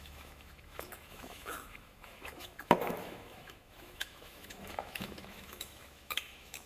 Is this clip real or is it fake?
fake